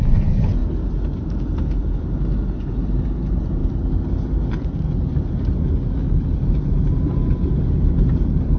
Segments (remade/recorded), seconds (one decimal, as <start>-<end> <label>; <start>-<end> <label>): 0.0-8.6 recorded